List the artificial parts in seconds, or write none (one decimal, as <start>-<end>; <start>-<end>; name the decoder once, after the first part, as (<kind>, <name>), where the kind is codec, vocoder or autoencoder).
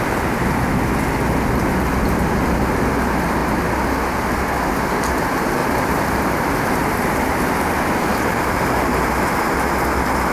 5.6-6.5 (vocoder, BigVGAN v2); 8.1-9.4